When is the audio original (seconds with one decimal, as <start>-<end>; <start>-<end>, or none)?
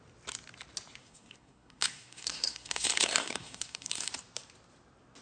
0.0-1.0; 4.1-5.2